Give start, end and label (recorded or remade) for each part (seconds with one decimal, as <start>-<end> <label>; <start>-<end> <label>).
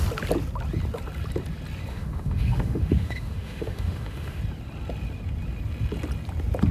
0.0-1.9 recorded; 1.9-4.4 remade; 4.4-6.7 recorded